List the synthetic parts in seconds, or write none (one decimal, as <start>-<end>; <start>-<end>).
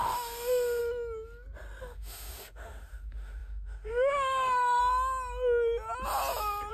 0.0-0.8; 1.8-4.8